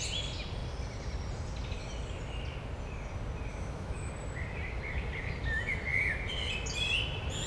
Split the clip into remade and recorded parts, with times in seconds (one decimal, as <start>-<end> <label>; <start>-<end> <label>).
0.0-3.5 recorded; 3.5-4.1 remade; 4.1-7.5 recorded